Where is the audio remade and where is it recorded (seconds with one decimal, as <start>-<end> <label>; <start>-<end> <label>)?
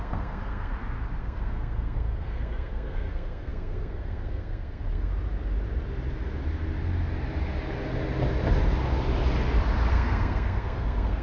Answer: 0.0-0.7 remade; 0.7-1.2 recorded; 1.2-5.1 remade; 5.1-9.9 recorded; 9.9-11.2 remade